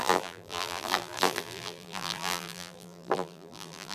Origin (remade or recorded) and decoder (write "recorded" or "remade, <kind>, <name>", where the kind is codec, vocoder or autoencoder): remade, vocoder, BigVGAN v2